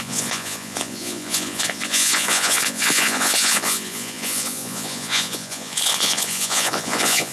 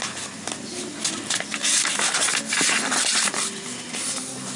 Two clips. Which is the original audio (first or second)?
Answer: second